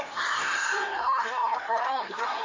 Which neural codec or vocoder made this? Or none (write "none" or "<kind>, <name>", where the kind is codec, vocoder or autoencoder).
codec, SNAC